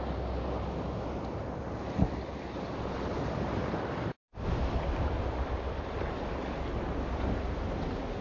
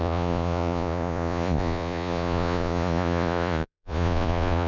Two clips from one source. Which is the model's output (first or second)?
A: second